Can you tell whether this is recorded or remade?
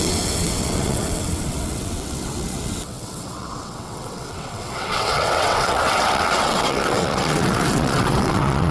remade